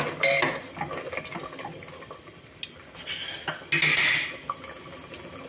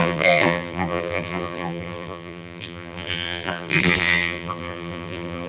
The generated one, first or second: second